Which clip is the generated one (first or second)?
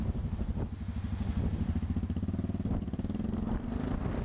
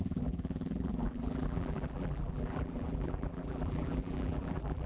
second